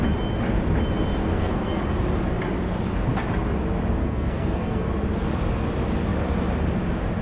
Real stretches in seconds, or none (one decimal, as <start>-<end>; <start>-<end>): 0.0-1.2; 1.8-4.0; 4.9-7.2